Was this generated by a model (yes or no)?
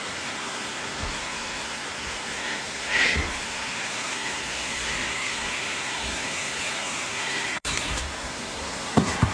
yes